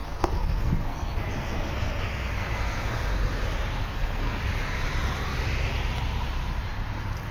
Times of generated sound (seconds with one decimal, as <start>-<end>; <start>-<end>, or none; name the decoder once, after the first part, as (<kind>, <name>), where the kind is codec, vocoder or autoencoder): 0.0-3.1 (codec, SNAC); 3.8-4.4